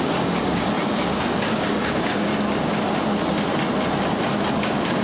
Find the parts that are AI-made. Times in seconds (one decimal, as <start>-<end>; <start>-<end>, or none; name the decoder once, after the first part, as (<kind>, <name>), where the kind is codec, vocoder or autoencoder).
0.0-2.3 (codec, DAC); 4.6-5.0